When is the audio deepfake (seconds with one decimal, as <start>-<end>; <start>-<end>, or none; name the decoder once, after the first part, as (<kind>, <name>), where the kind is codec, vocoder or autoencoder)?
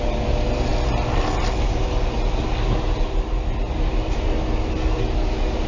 none